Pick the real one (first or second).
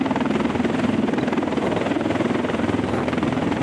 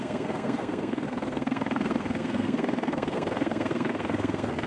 first